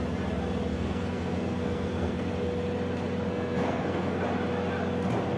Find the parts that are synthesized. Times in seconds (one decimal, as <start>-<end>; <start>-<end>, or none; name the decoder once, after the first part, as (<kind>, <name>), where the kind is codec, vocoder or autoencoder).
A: 0.7-2.3 (codec, SNAC); 3.3-4.2